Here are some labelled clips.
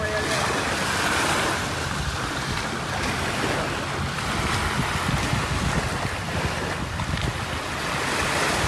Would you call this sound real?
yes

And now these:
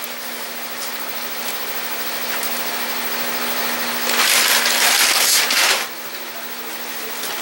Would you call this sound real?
yes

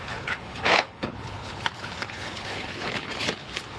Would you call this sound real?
no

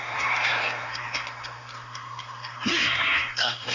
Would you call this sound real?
no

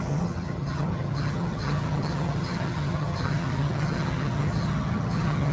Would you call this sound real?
no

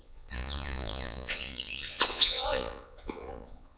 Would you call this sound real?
no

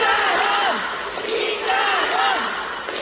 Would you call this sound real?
yes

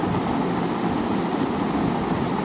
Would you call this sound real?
yes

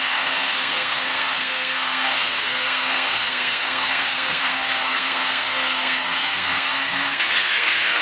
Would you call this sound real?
no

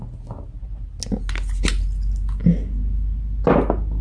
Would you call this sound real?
yes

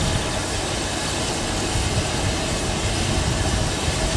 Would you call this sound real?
yes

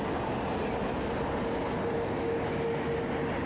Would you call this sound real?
yes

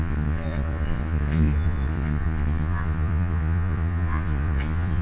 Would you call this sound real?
no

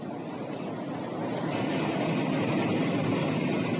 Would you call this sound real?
yes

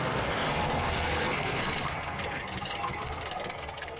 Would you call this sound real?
no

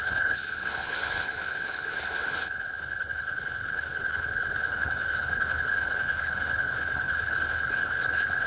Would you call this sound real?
no